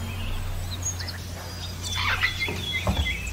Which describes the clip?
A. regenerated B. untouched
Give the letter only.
B